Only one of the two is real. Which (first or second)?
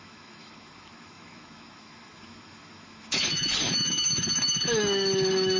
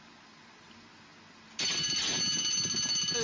second